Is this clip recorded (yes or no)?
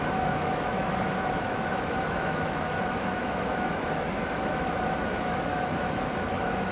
no